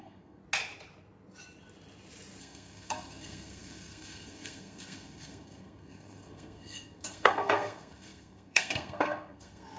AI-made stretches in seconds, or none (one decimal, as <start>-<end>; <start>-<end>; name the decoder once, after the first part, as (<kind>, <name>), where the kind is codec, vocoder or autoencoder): 0.0-0.4 (codec, SNAC); 2.4-9.8